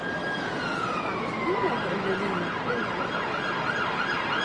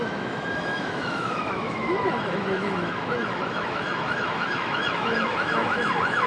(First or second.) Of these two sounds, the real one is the first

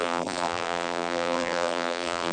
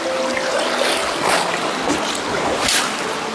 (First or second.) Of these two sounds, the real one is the second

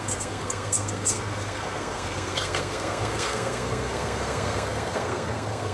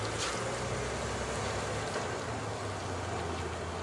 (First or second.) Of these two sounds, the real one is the second